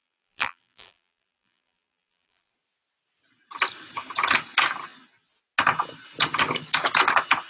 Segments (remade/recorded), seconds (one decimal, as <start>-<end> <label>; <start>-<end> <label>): 0.0-2.5 remade; 2.5-7.5 recorded